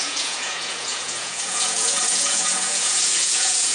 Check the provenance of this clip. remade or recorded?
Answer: remade